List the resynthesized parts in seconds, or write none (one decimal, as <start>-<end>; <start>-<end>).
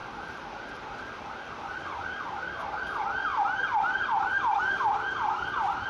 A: 3.3-4.4